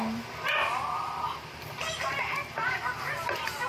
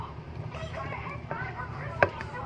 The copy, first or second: second